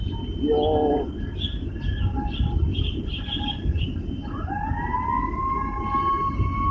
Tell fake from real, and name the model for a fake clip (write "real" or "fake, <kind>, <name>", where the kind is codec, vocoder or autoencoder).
real